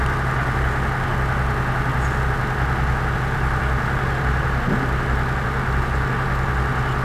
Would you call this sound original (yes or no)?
yes